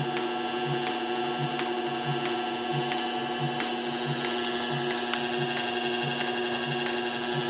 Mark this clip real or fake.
real